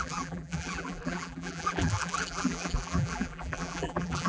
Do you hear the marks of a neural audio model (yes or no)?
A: yes